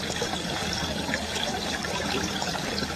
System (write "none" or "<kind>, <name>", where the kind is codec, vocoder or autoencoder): codec, DAC